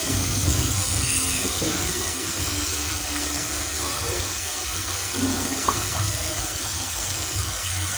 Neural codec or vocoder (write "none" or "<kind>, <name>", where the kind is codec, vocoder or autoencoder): codec, SNAC